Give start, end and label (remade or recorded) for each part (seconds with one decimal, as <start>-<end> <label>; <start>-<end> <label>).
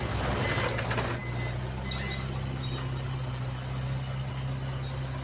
0.0-5.2 recorded